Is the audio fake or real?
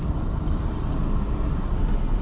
real